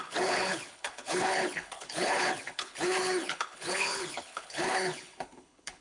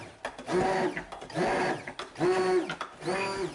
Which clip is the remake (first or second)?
first